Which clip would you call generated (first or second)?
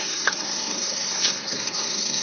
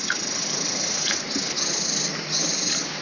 first